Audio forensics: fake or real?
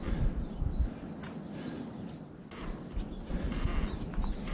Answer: real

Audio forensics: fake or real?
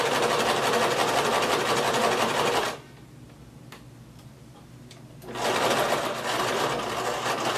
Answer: real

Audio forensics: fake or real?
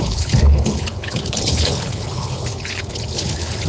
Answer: fake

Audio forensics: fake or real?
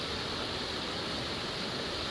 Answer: real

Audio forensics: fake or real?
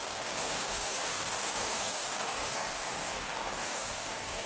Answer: fake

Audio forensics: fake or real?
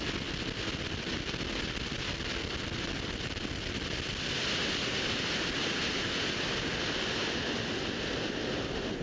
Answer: real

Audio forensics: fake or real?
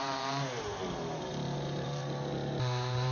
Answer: fake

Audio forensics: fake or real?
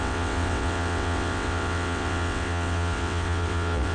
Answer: fake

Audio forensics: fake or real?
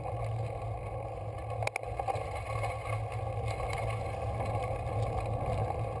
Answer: real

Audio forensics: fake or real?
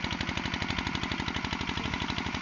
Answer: real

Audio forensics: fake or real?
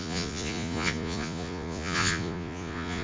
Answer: fake